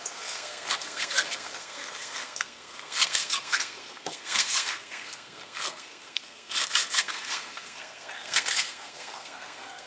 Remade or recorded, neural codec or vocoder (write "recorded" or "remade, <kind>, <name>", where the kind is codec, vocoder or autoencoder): remade, codec, SNAC